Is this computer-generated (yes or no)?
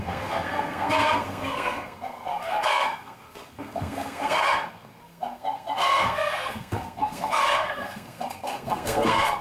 yes